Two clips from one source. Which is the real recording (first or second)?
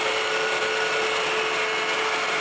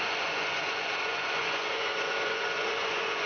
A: first